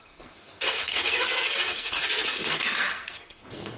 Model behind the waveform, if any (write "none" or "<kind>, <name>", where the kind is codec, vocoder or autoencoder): codec, SNAC